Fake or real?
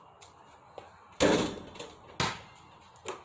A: real